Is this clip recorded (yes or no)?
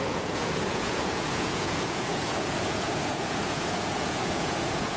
no